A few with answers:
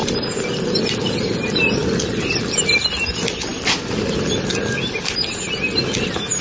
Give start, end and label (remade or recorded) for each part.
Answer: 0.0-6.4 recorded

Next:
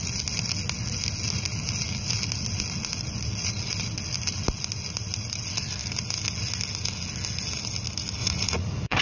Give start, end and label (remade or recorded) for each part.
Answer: 0.0-8.2 recorded; 8.2-9.0 remade

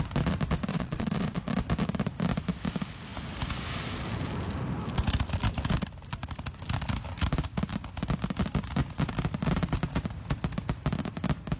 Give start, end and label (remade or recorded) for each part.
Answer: 0.0-0.7 recorded; 0.7-1.5 remade; 1.5-11.6 recorded

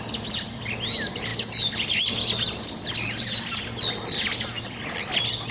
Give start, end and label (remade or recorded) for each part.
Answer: 0.0-5.5 recorded